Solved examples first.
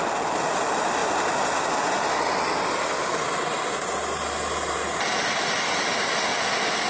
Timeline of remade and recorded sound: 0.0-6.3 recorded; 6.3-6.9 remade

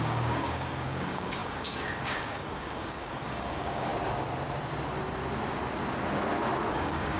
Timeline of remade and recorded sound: 0.0-3.9 remade; 3.9-6.7 recorded; 6.7-7.2 remade

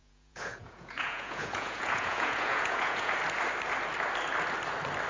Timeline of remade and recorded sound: 0.0-3.1 remade; 3.1-5.1 recorded

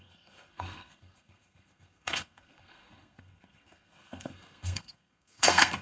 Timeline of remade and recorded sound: 0.0-5.8 remade

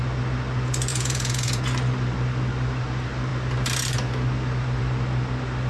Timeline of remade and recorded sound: 0.0-0.9 recorded; 0.9-1.6 remade; 1.6-5.7 recorded

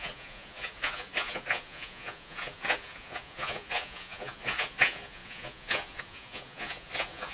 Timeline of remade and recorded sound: 0.0-7.3 remade